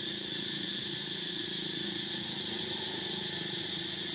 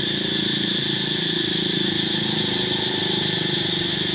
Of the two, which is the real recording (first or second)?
second